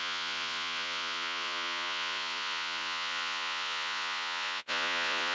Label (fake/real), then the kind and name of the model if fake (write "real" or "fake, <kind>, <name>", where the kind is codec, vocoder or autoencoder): fake, vocoder, Vocos